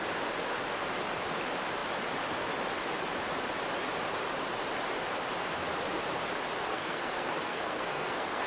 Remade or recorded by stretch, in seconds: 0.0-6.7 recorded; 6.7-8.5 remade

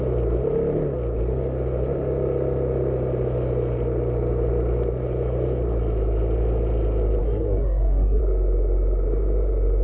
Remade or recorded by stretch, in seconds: 0.0-7.2 recorded; 7.2-8.2 remade; 8.2-9.8 recorded

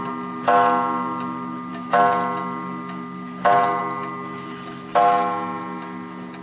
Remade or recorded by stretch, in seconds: 0.0-6.4 recorded

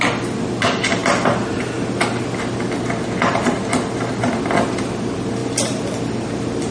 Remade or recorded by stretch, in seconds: 0.0-6.7 recorded

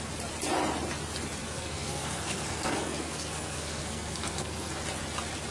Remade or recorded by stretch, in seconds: 0.0-1.4 recorded; 1.4-4.7 remade; 4.7-5.5 recorded

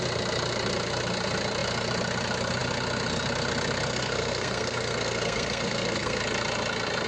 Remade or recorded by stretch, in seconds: 0.0-3.9 recorded; 3.9-6.2 remade; 6.2-7.1 recorded

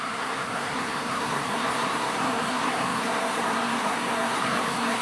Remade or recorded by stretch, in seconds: 0.0-5.0 remade

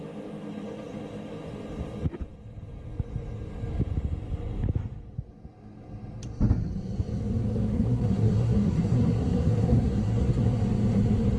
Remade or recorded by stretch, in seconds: 0.0-7.5 recorded; 7.5-10.6 remade; 10.6-11.4 recorded